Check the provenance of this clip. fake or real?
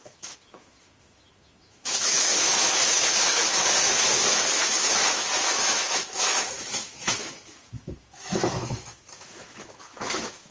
fake